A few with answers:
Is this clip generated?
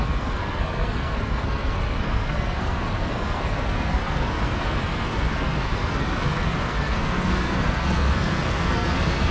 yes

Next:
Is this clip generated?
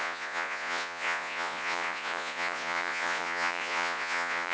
yes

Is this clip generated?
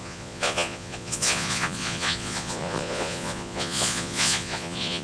yes